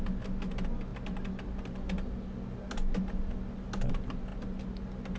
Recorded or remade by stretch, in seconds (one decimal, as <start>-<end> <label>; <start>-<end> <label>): 0.0-5.2 recorded